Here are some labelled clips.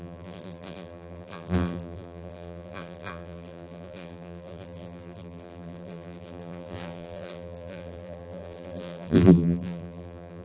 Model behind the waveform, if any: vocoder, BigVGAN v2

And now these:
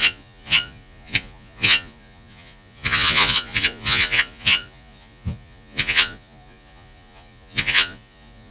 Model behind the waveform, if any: vocoder, Vocos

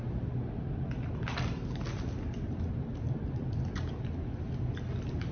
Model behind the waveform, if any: none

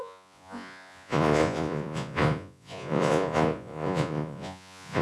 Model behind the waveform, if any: vocoder, Vocos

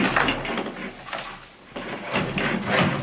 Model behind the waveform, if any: none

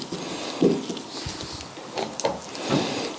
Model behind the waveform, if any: none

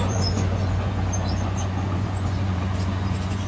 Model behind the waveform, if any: vocoder, Vocos